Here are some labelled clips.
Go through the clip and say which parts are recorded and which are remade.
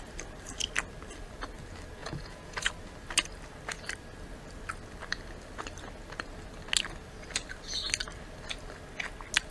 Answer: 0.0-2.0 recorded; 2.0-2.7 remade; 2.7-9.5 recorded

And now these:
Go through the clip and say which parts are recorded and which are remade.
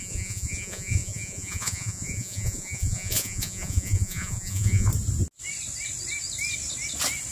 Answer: 0.0-4.9 remade; 4.9-7.3 recorded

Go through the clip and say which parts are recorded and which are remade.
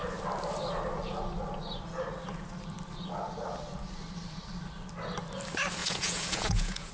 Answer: 0.0-5.8 recorded; 5.8-6.9 remade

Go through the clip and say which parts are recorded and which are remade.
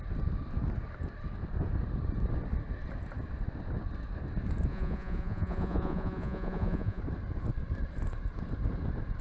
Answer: 0.0-4.7 recorded; 4.7-7.0 remade; 7.0-9.2 recorded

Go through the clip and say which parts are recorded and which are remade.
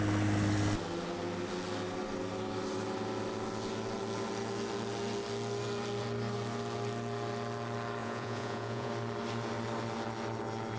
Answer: 0.0-8.0 recorded; 8.0-8.9 remade; 8.9-10.8 recorded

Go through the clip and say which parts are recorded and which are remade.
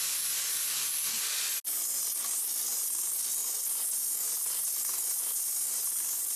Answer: 0.0-6.4 recorded